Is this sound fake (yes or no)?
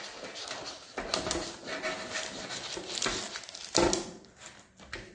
no